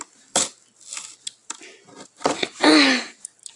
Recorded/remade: recorded